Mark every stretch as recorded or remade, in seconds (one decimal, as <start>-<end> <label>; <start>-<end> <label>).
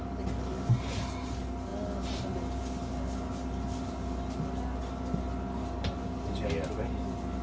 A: 0.0-7.4 recorded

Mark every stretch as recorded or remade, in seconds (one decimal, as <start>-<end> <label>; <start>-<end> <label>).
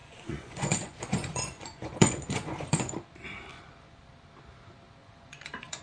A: 0.0-2.9 remade; 2.9-3.5 recorded; 3.5-4.0 remade; 4.0-5.0 recorded; 5.0-5.8 remade